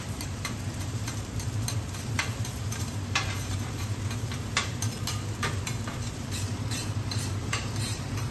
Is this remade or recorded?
remade